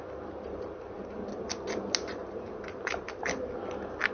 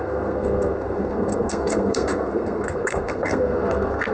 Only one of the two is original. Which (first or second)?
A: first